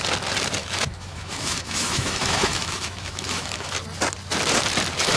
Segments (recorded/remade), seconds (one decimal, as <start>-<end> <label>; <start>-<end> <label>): 0.0-0.6 recorded; 0.6-3.7 remade; 3.7-5.2 recorded